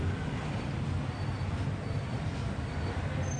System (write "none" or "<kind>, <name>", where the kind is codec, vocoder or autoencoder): vocoder, BigVGAN v2